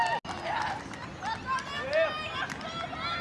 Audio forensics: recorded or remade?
recorded